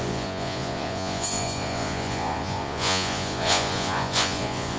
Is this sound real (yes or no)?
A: no